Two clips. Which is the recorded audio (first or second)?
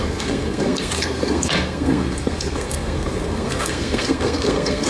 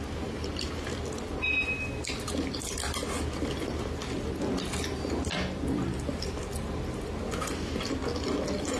second